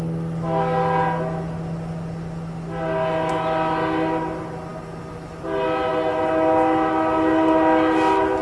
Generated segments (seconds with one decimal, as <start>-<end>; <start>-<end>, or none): none